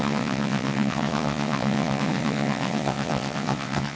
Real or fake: fake